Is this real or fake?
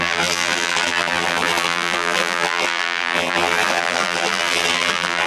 fake